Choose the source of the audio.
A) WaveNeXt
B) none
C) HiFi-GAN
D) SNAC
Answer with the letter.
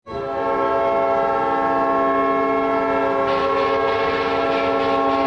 B